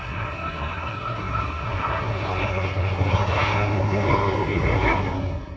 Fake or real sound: fake